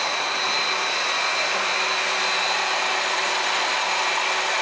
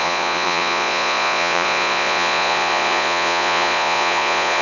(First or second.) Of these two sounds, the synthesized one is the second